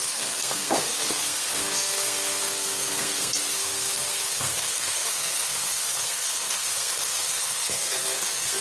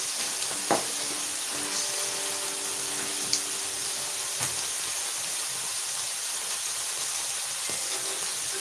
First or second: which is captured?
second